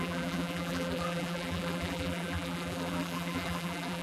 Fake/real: fake